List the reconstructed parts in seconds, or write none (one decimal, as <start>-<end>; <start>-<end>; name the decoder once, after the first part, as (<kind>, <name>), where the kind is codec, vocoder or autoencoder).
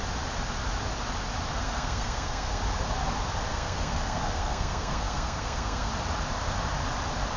1.6-2.6 (codec, SNAC); 3.5-5.9